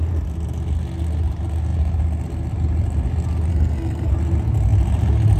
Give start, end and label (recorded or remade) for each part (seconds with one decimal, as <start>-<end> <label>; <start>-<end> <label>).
0.0-3.5 recorded; 3.5-4.1 remade; 4.1-5.4 recorded